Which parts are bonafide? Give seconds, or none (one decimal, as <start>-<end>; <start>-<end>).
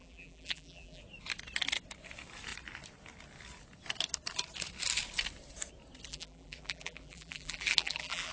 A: 1.0-6.1